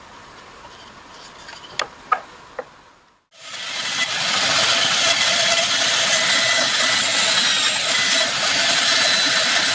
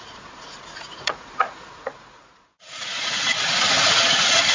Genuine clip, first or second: first